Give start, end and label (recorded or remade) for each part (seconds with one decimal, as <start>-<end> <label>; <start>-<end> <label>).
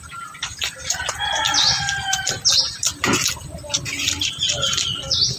0.0-5.4 recorded